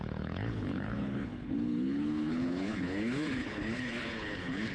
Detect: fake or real fake